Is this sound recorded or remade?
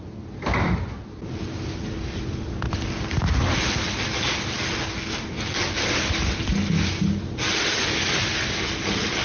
recorded